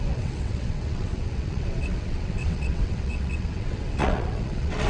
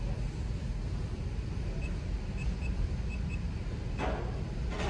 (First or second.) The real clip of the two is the second